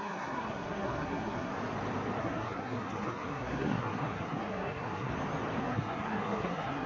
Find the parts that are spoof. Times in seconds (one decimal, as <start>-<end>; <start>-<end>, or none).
0.0-1.5; 2.2-5.1; 5.6-6.9